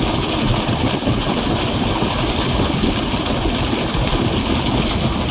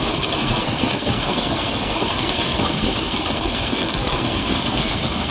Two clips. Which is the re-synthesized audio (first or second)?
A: second